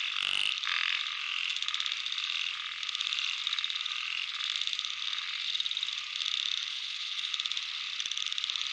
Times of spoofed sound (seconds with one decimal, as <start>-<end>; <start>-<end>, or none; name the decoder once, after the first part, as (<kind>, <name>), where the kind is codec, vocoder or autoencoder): 6.7-7.3 (codec, HILCodec)